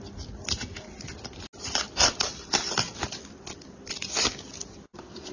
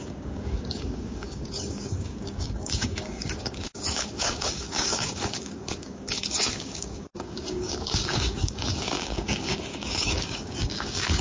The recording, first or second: first